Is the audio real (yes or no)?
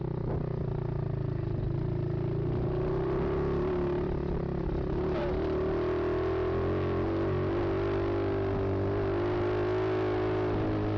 yes